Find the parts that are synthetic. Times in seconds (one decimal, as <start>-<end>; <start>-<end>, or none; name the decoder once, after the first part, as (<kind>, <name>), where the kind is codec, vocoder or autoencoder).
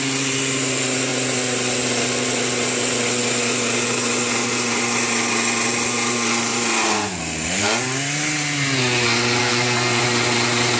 9.4-10.0 (codec, SNAC)